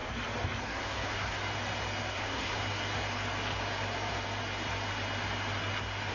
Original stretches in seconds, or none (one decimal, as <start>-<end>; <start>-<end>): 0.0-0.6; 1.4-2.1; 2.6-6.1